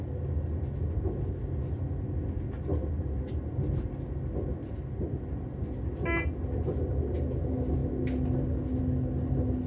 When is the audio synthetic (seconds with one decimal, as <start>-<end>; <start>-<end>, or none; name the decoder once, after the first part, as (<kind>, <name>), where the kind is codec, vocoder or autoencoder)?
none